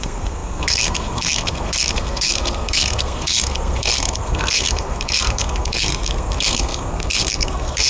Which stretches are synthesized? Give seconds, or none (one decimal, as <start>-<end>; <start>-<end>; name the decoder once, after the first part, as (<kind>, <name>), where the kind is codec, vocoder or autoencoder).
0.0-7.9 (codec, SNAC)